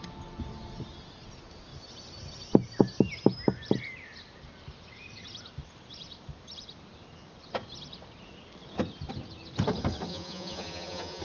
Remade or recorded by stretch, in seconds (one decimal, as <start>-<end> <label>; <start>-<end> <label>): 0.0-10.1 recorded; 10.1-11.2 remade